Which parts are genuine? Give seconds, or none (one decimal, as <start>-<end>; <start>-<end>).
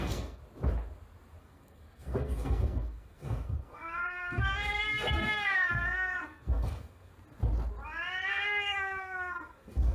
0.4-1.4; 7.1-8.3